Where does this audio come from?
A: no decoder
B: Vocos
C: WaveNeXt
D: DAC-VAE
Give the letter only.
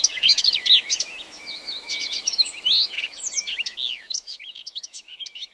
D